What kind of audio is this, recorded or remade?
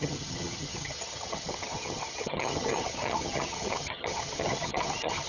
remade